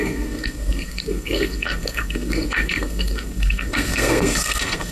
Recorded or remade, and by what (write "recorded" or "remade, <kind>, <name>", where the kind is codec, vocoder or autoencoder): remade, codec, SNAC